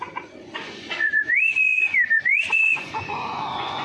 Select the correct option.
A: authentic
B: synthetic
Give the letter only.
B